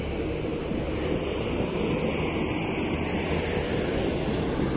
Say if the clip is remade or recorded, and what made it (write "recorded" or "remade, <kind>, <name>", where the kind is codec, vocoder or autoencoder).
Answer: recorded